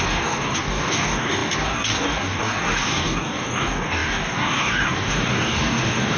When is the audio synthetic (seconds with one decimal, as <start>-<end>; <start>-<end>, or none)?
0.0-6.2